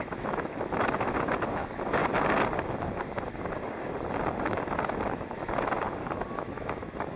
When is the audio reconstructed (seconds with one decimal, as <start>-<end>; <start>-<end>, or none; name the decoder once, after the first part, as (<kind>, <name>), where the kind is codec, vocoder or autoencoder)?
0.0-2.0 (autoencoder, DAC-VAE); 6.3-7.2

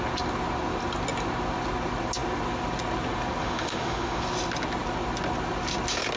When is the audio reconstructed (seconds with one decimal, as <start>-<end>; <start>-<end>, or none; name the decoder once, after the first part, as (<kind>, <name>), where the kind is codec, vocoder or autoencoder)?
3.4-4.2 (autoencoder, DAC-VAE)

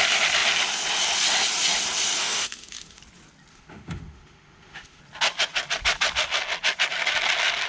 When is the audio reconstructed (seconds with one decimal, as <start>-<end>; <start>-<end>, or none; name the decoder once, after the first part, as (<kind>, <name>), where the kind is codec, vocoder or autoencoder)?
2.2-3.0 (autoencoder, DAC-VAE); 3.5-5.0

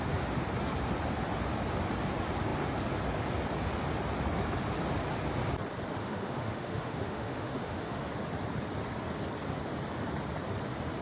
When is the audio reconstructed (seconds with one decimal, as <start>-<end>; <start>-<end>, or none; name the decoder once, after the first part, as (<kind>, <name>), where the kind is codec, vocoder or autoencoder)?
6.0-8.1 (autoencoder, DAC-VAE)

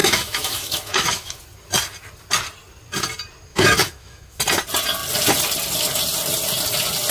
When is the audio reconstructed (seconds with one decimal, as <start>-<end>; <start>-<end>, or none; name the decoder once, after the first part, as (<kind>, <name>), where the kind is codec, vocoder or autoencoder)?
0.0-1.4 (autoencoder, DAC-VAE); 3.5-4.4

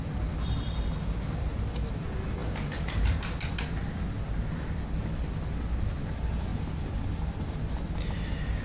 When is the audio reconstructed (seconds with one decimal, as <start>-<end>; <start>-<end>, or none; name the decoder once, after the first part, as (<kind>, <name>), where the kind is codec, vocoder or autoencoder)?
none

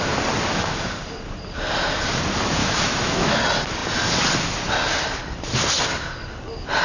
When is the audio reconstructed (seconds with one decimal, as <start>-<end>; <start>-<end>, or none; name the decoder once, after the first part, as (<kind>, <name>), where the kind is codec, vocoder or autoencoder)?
2.6-3.4 (autoencoder, DAC-VAE)